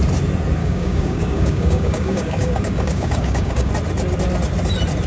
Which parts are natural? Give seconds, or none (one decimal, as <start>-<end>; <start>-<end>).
0.0-0.6; 3.7-5.1